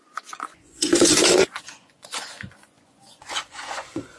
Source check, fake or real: fake